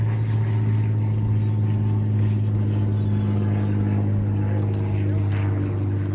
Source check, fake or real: real